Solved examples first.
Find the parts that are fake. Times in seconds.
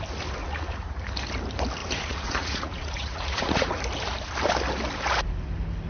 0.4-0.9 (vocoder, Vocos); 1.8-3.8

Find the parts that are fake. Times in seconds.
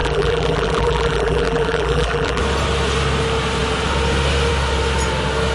0.0-2.4 (vocoder, BigVGAN v2)